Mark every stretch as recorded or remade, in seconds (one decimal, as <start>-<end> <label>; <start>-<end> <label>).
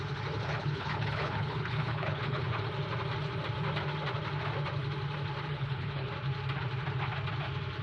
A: 0.0-0.5 recorded; 0.5-2.7 remade; 2.7-5.5 recorded; 5.5-6.1 remade; 6.1-7.8 recorded